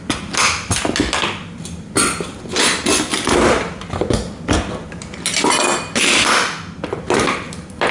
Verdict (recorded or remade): recorded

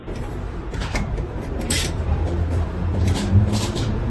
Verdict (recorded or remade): remade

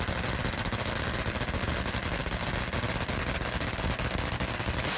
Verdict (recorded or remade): recorded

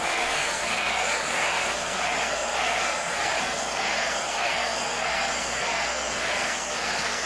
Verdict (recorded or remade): remade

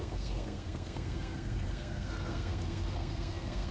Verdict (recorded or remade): remade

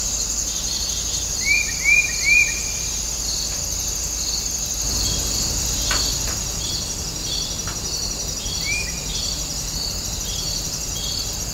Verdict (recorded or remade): remade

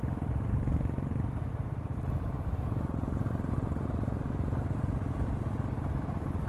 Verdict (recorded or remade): recorded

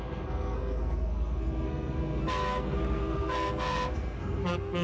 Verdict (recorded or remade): remade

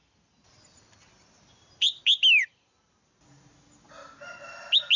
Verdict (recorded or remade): recorded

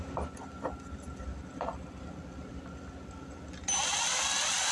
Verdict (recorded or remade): recorded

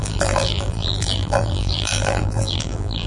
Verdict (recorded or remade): remade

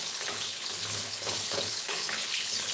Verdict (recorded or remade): remade